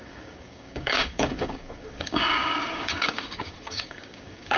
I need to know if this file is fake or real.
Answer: fake